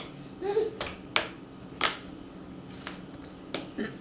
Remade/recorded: recorded